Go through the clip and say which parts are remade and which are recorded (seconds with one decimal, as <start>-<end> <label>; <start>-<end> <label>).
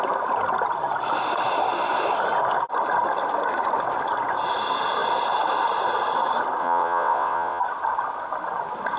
0.0-6.6 recorded; 6.6-7.6 remade; 7.6-9.0 recorded